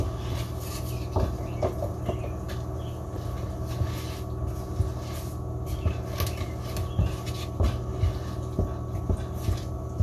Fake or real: real